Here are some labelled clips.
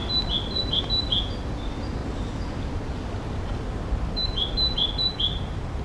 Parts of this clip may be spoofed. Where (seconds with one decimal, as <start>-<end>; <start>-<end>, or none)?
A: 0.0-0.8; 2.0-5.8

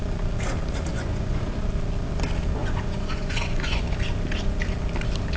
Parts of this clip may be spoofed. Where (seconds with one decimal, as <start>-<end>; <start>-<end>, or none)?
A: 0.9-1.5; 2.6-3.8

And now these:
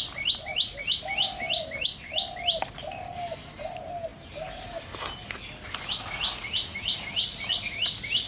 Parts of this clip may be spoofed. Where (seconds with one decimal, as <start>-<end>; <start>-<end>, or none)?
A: none

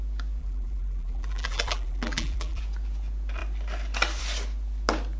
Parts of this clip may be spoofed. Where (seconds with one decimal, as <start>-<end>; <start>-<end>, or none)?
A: 0.4-2.6

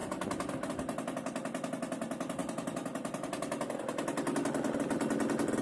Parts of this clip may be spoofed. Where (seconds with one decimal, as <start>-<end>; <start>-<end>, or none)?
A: none